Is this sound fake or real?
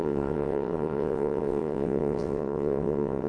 fake